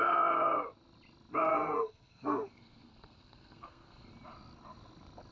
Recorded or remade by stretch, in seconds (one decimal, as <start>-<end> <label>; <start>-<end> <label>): 0.0-1.5 recorded; 1.5-4.1 remade; 4.1-5.3 recorded